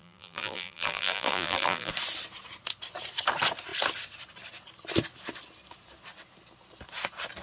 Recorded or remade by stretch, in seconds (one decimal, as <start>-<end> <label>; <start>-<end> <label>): 0.0-1.9 remade; 1.9-7.4 recorded